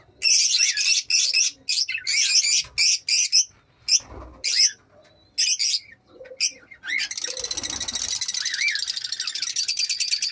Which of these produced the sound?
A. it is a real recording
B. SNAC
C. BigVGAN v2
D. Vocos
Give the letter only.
A